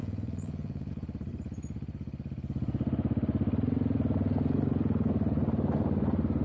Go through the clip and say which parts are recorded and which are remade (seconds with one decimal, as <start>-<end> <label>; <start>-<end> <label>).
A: 0.0-0.9 remade; 0.9-6.4 recorded